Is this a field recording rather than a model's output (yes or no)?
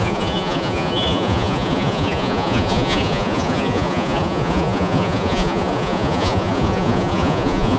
no